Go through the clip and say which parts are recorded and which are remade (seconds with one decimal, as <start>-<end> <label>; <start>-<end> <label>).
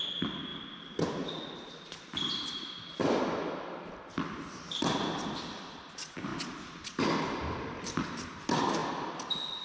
0.0-0.5 remade; 0.5-3.0 recorded; 3.0-6.3 remade; 6.3-7.2 recorded; 7.2-9.6 remade